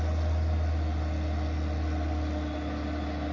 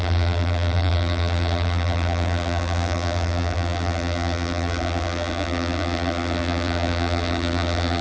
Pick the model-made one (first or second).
second